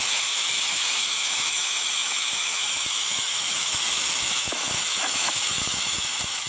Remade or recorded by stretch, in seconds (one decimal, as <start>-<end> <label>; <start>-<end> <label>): 0.0-6.5 remade